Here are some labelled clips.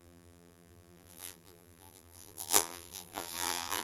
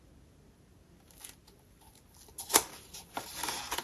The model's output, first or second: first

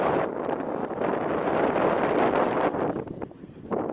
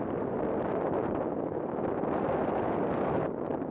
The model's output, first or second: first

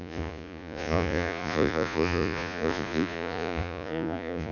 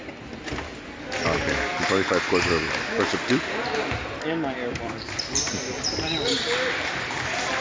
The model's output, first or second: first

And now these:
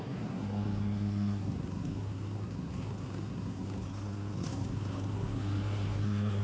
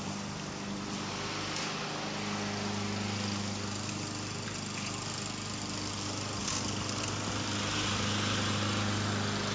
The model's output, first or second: first